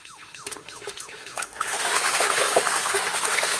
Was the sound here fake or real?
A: fake